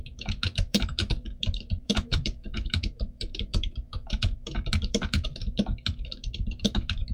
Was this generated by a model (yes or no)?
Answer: yes